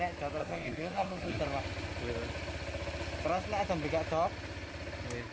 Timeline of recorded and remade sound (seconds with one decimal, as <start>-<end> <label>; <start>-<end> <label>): 0.0-0.4 recorded; 0.4-1.4 remade; 1.4-5.3 recorded